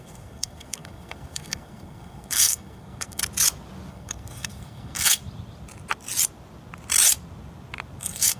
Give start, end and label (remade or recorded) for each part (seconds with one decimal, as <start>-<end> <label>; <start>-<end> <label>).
0.0-3.2 remade; 3.2-3.9 recorded; 3.9-5.2 remade; 5.2-8.0 recorded; 8.0-8.4 remade